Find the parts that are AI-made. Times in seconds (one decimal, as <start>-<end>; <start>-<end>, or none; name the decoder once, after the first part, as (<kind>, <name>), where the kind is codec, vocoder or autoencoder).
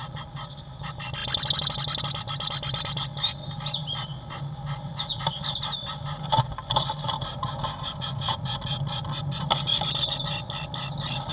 none